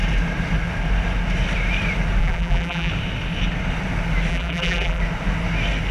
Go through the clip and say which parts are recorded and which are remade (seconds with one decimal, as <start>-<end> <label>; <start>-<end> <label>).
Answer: 0.0-2.2 recorded; 2.2-2.9 remade; 2.9-4.3 recorded; 4.3-5.0 remade; 5.0-5.9 recorded